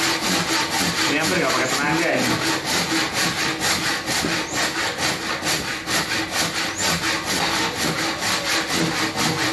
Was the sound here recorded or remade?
recorded